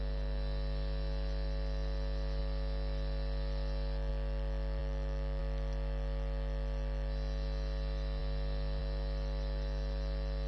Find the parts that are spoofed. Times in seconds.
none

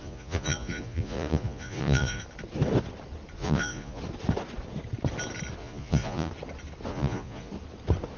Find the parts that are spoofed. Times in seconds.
0.0-2.2 (vocoder, Vocos); 3.4-4.0; 5.6-6.3; 6.9-7.5

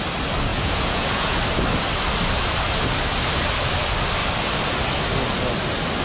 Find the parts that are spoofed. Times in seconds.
0.5-1.4 (vocoder, Vocos)

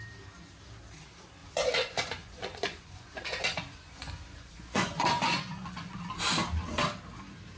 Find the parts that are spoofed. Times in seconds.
1.4-6.0 (vocoder, Vocos)

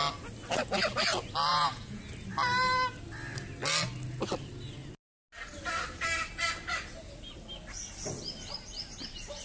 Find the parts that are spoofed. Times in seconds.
1.5-2.0 (vocoder, Vocos)

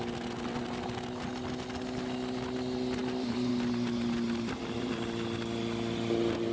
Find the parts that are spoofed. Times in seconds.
none

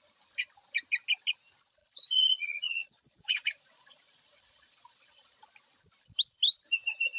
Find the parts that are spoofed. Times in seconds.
1.8-5.3 (vocoder, Vocos)

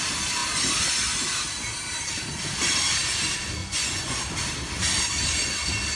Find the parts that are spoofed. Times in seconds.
3.6-4.2 (vocoder, Vocos)